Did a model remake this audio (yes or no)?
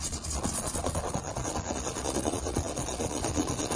yes